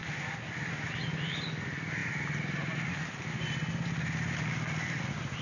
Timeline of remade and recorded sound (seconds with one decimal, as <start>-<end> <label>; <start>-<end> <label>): 0.0-5.4 recorded